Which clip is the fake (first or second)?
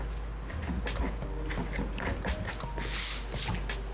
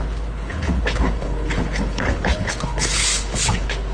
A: second